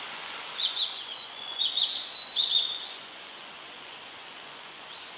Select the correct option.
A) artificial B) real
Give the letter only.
A